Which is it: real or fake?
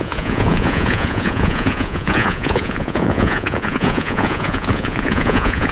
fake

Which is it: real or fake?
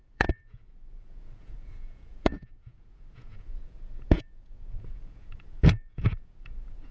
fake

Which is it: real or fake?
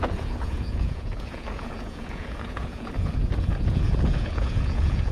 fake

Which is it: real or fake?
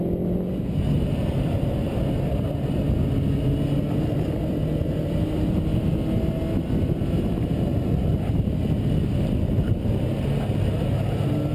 real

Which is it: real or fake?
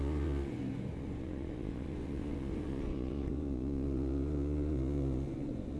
fake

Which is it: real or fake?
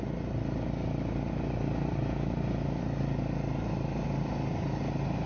real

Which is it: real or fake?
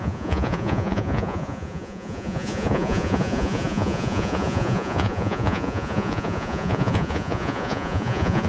fake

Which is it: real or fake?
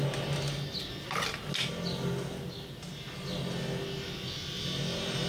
real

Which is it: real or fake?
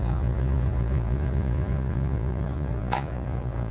fake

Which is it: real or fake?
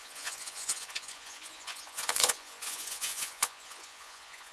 fake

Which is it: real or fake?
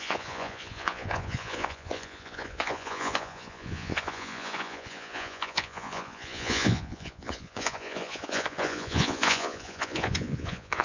fake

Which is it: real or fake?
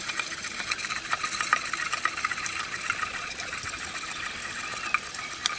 real